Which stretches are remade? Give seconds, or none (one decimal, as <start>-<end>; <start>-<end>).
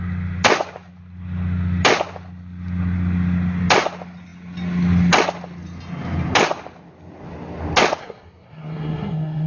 8.0-9.5